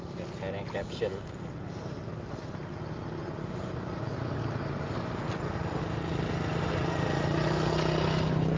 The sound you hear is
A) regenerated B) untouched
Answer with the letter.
B